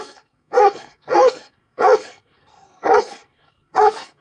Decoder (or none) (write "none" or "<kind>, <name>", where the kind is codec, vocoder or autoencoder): codec, SNAC